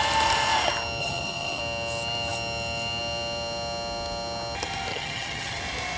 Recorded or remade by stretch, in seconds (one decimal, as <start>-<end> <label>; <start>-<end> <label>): 0.0-1.0 recorded; 1.0-1.6 remade; 1.6-4.9 recorded; 4.9-5.6 remade; 5.6-6.0 recorded